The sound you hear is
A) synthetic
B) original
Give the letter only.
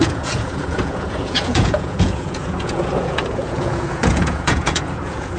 A